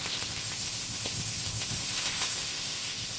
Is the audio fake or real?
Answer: fake